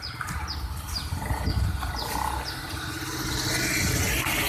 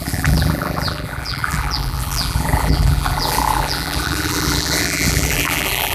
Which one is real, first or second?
first